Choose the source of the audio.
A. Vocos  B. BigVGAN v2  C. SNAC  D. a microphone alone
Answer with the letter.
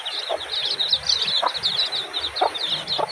D